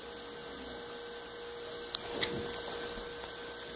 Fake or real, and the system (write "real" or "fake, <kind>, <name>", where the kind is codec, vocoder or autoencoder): real